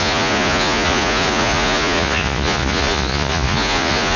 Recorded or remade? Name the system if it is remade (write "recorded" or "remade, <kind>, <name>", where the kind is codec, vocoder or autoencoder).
remade, vocoder, Vocos